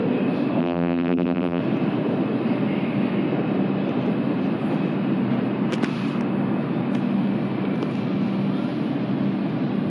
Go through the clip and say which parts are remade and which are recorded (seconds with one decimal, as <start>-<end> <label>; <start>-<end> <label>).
0.0-0.6 recorded; 0.6-1.6 remade; 1.6-9.9 recorded